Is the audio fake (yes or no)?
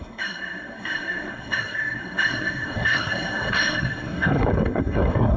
yes